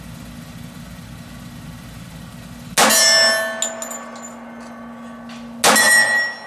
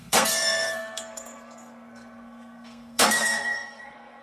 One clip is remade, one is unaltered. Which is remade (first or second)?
second